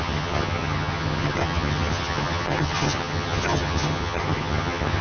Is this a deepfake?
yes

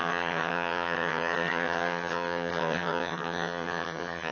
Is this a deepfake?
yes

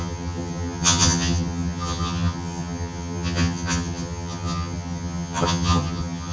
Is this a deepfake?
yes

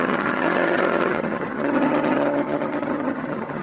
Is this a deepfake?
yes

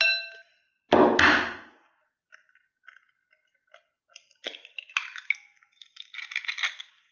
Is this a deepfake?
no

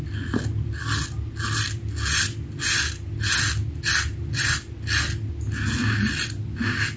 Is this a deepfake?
no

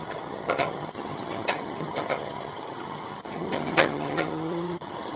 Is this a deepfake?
yes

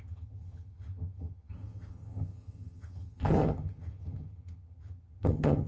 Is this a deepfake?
yes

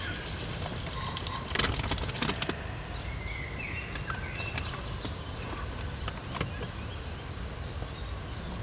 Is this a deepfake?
no